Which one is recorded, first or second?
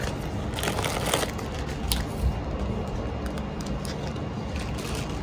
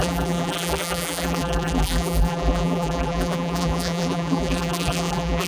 first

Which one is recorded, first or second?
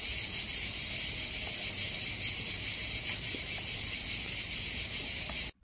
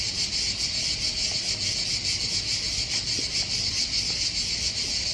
second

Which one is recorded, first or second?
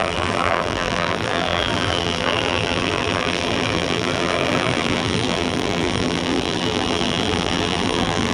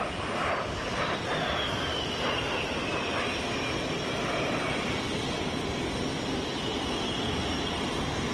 second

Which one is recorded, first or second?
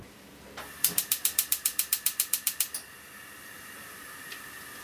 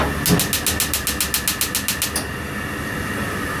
second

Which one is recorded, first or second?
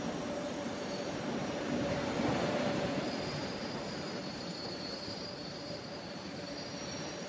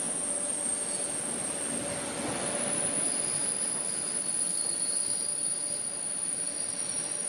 second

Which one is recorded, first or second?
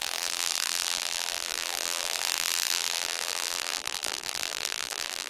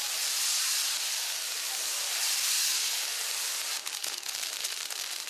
second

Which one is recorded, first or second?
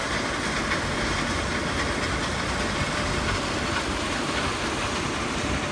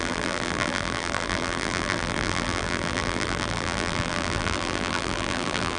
first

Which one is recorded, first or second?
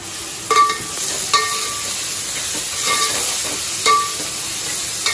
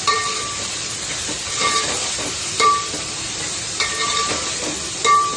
first